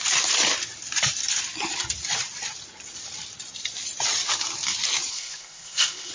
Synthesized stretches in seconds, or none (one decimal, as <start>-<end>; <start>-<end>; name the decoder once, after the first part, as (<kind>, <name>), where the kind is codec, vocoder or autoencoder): 5.1-6.1 (codec, ZipCodec)